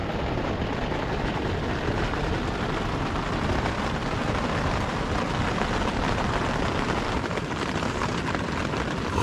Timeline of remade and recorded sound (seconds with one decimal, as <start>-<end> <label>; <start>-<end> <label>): 0.0-9.2 recorded